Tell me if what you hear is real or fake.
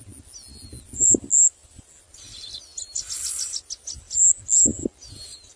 real